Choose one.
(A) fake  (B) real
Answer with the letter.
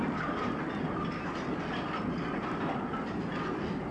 B